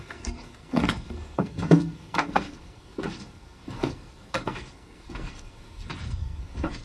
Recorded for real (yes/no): no